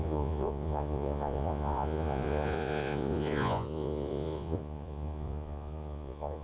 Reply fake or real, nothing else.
fake